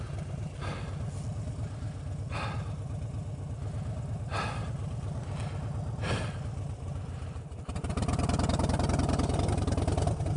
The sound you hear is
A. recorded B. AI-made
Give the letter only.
A